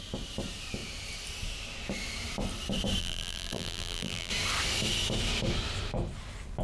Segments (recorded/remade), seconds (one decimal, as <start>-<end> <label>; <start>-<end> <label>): 0.0-3.0 recorded; 3.0-4.3 remade; 4.3-6.6 recorded